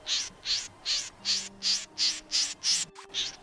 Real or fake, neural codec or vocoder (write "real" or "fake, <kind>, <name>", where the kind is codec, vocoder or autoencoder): real